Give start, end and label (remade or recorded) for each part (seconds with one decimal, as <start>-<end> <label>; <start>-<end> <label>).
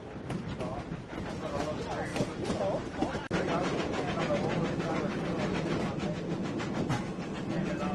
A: 0.0-2.1 recorded; 2.1-4.2 remade; 4.2-7.9 recorded